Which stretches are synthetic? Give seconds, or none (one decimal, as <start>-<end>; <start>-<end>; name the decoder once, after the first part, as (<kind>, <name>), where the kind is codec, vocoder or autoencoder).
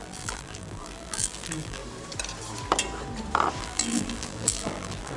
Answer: 0.0-1.8 (vocoder, BigVGAN v2); 3.6-5.2